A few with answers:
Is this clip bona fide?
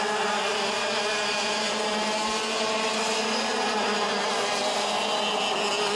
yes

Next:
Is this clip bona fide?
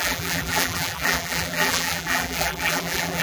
no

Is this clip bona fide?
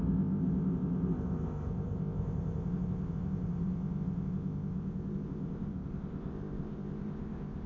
no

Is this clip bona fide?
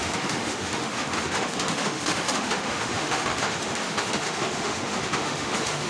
no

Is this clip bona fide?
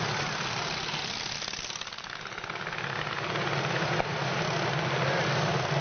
yes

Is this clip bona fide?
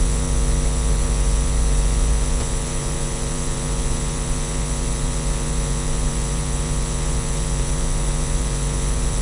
no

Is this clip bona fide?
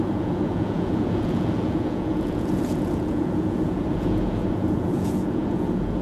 no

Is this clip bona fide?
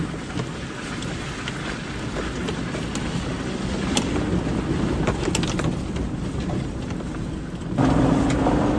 yes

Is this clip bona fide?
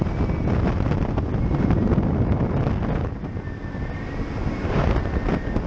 yes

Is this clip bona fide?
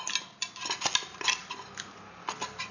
yes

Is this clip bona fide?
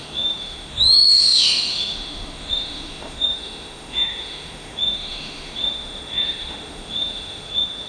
no